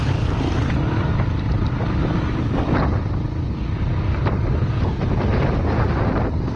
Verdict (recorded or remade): recorded